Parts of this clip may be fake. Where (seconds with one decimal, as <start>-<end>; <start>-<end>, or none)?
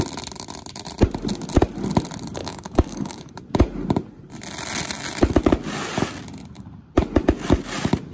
2.4-3.3